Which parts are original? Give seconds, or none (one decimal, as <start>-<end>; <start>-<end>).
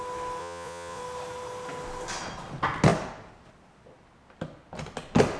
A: 0.0-0.4; 1.0-5.4